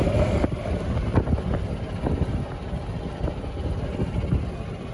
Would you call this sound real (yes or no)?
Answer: yes